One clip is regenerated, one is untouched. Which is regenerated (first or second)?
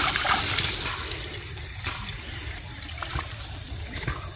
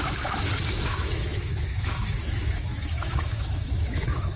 second